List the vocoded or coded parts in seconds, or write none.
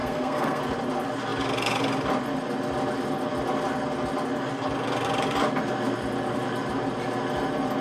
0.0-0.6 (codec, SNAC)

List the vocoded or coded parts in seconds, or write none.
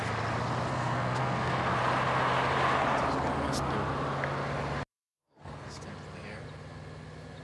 0.7-1.8 (codec, SNAC); 4.9-5.8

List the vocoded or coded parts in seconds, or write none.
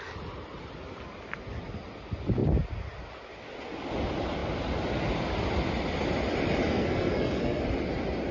6.7-7.6 (codec, SNAC)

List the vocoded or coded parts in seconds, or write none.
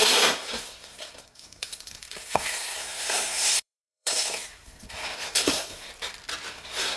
0.0-5.9 (codec, SNAC); 6.5-7.0